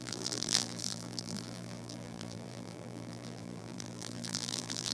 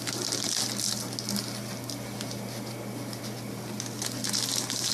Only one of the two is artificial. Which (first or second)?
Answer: first